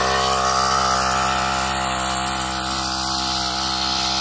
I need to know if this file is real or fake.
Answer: real